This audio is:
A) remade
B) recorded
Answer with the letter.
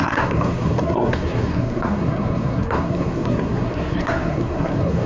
A